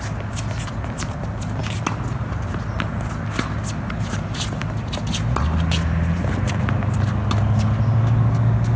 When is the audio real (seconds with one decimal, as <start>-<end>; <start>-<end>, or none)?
0.0-8.8